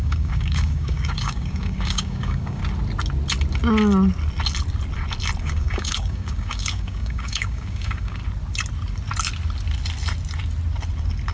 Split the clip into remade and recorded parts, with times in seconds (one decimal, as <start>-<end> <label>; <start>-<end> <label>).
0.0-2.6 remade; 2.6-5.4 recorded; 5.4-8.2 remade; 8.2-11.3 recorded